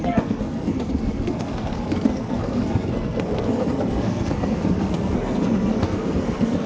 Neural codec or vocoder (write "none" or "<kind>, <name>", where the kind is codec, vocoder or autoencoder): codec, SNAC